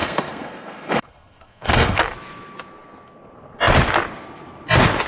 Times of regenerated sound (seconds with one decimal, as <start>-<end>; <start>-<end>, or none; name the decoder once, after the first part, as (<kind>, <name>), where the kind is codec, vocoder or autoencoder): 0.0-2.0 (codec, SNAC)